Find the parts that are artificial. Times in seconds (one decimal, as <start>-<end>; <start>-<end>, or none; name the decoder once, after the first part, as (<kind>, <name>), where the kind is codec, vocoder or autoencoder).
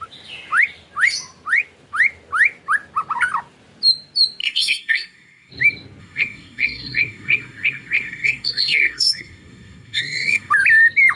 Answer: 4.4-5.5 (codec, SNAC); 6.0-10.5